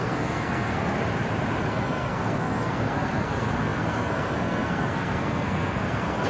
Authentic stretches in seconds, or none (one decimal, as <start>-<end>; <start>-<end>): 0.9-1.7